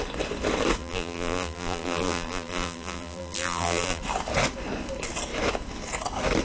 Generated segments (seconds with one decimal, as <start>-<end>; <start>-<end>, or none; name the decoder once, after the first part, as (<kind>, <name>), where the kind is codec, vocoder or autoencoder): 0.8-4.0 (vocoder, BigVGAN v2)